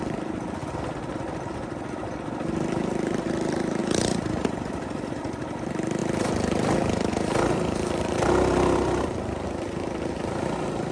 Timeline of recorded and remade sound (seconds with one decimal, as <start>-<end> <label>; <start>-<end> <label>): 0.0-0.6 remade; 0.6-1.1 recorded; 1.1-10.9 remade